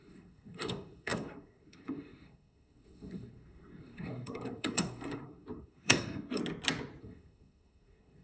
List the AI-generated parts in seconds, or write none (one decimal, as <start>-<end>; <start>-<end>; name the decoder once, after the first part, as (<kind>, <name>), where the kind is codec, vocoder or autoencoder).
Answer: 0.0-6.4 (codec, SNAC); 7.0-8.2